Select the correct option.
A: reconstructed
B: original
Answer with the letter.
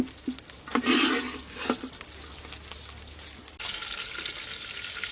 B